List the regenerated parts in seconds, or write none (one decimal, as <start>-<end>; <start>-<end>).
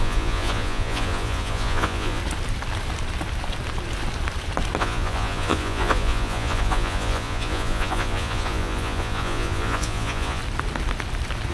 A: 0.0-2.2; 4.8-10.4